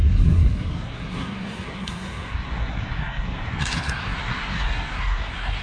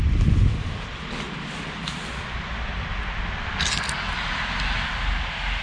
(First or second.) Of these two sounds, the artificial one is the first